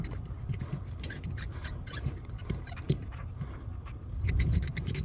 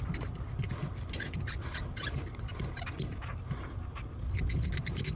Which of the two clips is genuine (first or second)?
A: second